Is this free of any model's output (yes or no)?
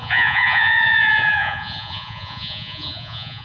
no